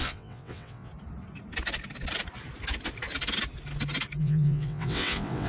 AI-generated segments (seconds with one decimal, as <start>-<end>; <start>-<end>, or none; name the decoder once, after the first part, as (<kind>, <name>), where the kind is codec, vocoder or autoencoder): 0.0-0.9 (vocoder, WaveNeXt); 4.2-5.5